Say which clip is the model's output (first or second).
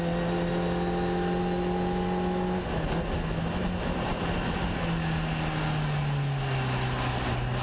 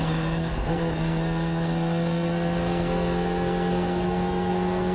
second